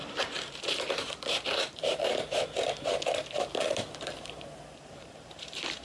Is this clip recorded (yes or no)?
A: no